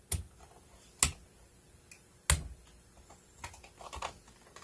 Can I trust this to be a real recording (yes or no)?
yes